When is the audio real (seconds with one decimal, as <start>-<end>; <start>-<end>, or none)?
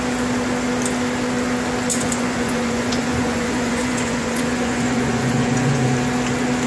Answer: 0.0-1.9; 5.9-6.7